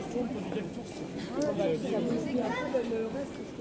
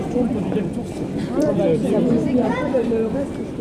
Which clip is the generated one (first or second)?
second